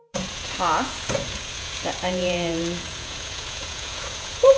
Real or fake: fake